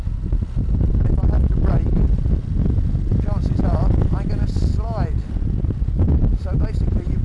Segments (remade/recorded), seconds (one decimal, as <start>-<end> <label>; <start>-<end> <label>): 0.0-7.2 recorded

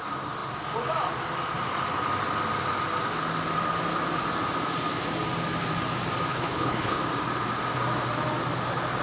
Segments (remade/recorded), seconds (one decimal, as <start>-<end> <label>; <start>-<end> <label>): 0.0-6.3 recorded; 6.3-7.0 remade; 7.0-9.0 recorded

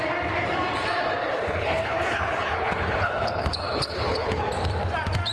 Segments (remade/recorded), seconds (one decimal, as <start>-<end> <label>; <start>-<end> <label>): 0.0-1.2 recorded; 1.2-4.4 remade; 4.4-5.3 recorded

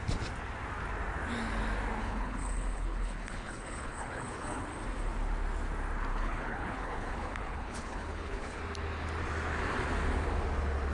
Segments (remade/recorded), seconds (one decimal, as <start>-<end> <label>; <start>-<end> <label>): 0.0-2.0 recorded; 2.0-4.7 remade; 4.7-6.1 recorded; 6.1-8.6 remade; 8.6-10.9 recorded

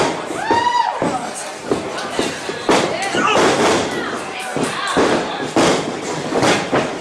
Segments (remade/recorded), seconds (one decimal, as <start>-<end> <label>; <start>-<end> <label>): 0.0-7.0 recorded

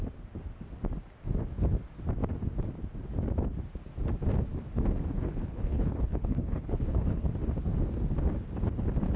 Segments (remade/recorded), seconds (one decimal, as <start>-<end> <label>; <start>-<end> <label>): 0.0-5.1 recorded; 5.1-7.3 remade; 7.3-9.2 recorded

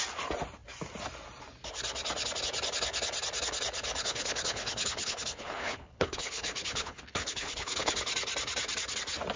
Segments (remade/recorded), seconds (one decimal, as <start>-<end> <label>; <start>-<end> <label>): 0.0-4.0 recorded; 4.0-8.0 remade; 8.0-9.4 recorded

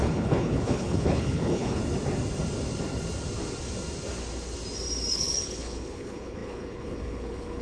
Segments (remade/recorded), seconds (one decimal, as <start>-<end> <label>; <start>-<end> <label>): 0.0-1.8 remade; 1.8-5.1 recorded; 5.1-7.6 remade